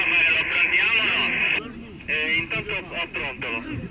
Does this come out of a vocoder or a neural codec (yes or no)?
no